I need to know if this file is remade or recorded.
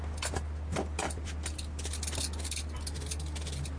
recorded